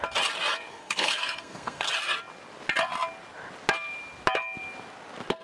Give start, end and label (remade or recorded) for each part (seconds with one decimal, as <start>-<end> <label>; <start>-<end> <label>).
0.0-0.7 recorded; 0.7-1.9 remade; 1.9-5.4 recorded